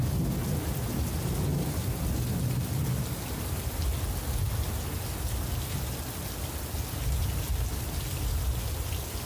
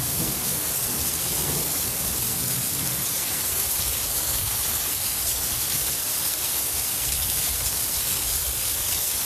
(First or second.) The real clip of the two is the first